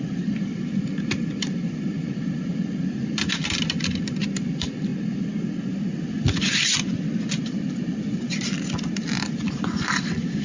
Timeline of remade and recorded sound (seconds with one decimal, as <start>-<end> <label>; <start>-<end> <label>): 0.0-4.9 remade; 4.9-5.7 recorded; 5.7-10.4 remade